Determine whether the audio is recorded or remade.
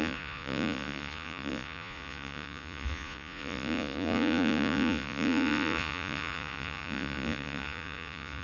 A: remade